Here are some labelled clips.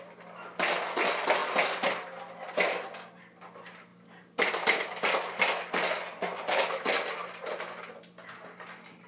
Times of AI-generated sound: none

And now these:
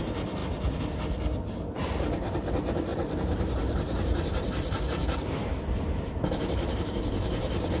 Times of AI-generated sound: 0.0-0.4 (vocoder, BigVGAN v2); 1.4-7.8

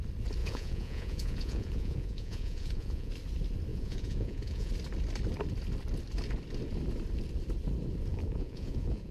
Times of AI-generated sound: 0.4-3.1 (vocoder, Vocos); 3.7-4.7; 8.1-9.1

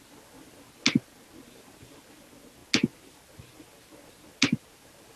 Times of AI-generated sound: none